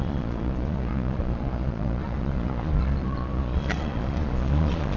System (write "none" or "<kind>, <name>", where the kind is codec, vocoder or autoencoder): vocoder, Vocos